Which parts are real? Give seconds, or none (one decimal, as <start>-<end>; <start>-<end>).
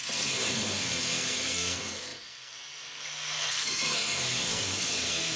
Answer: none